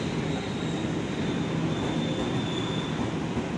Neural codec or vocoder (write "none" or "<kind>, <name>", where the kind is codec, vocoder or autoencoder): none